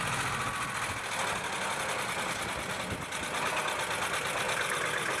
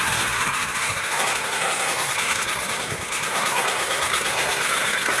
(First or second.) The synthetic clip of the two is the second